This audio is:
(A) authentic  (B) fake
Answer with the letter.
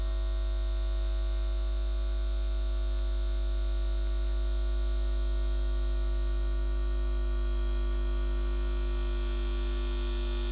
A